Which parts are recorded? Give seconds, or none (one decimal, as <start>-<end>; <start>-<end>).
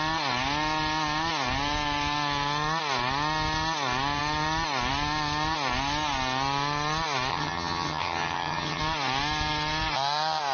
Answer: 0.0-7.3; 8.8-10.5